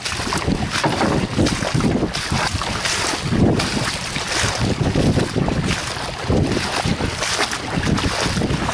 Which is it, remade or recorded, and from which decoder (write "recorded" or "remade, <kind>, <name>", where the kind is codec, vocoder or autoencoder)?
recorded